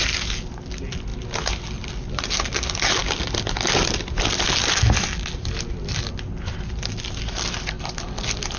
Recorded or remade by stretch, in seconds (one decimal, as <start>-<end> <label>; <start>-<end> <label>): 0.0-8.6 recorded